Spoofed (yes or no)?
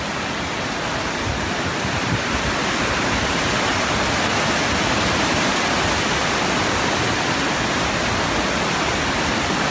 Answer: no